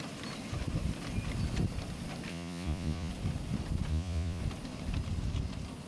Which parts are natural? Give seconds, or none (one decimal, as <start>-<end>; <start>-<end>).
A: 0.0-2.3; 3.1-3.9; 4.4-5.9